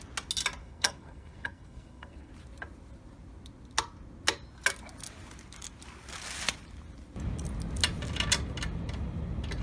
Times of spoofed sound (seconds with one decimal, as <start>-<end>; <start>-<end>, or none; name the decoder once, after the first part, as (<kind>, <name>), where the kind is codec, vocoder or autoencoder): 0.6-2.3 (codec, SNAC)